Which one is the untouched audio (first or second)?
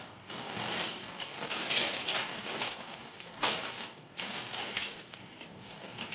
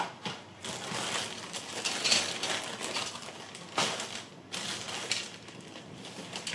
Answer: second